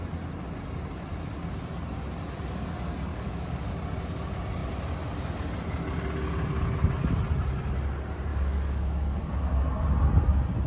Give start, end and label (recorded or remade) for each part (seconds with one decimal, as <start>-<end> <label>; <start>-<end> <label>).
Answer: 0.0-3.1 recorded; 3.1-3.7 remade; 3.7-8.3 recorded; 8.3-9.6 remade; 9.6-10.7 recorded